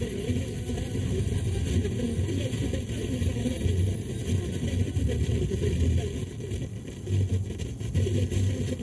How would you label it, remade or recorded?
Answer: recorded